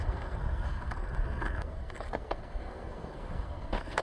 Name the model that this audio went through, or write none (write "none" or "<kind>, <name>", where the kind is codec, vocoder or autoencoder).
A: codec, SNAC